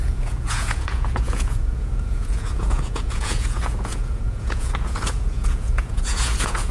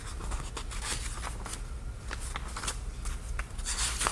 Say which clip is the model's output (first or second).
first